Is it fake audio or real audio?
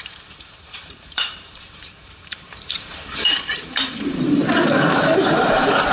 fake